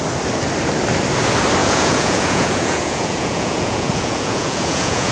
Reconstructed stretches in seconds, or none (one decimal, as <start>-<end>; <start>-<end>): 1.6-5.1